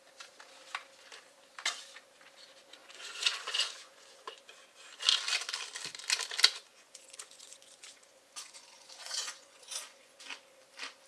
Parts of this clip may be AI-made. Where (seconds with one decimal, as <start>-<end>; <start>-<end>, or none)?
2.8-4.7; 6.7-10.2